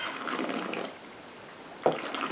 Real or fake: fake